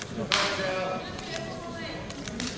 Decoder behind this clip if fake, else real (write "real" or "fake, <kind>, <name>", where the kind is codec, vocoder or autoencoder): real